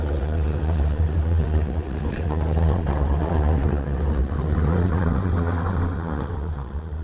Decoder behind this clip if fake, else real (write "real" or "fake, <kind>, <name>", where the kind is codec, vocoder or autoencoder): fake, vocoder, WaveNeXt